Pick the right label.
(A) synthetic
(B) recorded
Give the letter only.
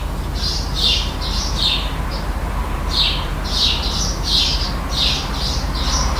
A